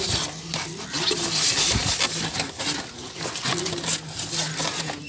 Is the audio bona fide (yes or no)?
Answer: yes